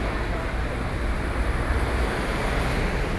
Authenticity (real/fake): real